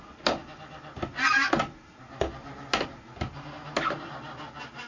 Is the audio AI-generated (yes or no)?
no